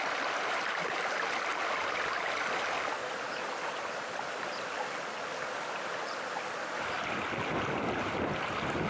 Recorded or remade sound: recorded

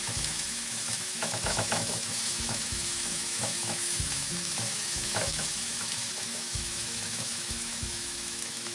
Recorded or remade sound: remade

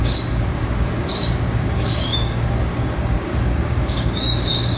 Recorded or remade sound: remade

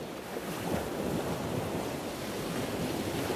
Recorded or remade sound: recorded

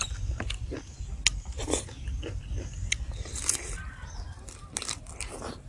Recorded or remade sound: recorded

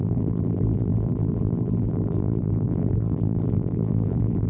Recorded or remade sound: remade